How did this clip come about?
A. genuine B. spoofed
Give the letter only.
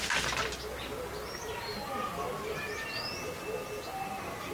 A